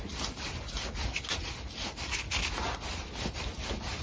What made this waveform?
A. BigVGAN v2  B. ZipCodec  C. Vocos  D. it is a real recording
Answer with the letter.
D